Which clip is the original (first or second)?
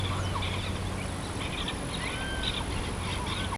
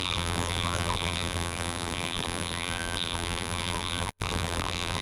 first